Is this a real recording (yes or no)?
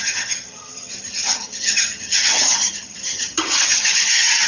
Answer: no